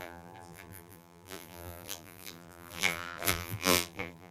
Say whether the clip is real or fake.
fake